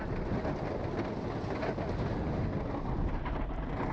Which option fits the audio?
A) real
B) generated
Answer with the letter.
A